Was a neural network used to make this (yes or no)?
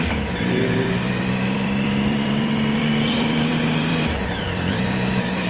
yes